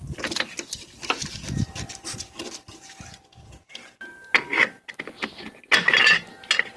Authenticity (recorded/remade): recorded